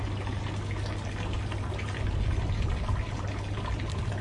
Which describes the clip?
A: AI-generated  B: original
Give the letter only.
B